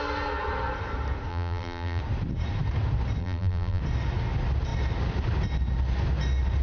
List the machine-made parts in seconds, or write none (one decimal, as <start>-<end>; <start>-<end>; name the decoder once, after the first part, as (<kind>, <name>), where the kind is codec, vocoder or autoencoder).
1.3-2.0 (vocoder, BigVGAN v2); 3.2-3.8